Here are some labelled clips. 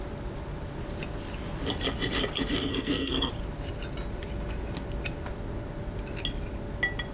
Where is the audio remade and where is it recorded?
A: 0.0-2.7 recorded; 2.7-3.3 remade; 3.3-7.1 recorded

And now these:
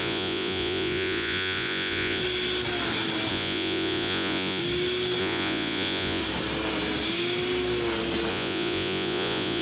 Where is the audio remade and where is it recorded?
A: 0.0-2.2 remade; 2.2-3.3 recorded; 3.3-4.6 remade; 4.6-5.2 recorded; 5.2-6.2 remade; 6.2-8.3 recorded; 8.3-9.6 remade